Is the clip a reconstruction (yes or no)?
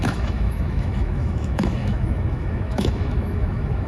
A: yes